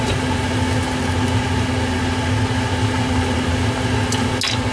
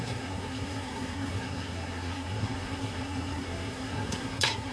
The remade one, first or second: second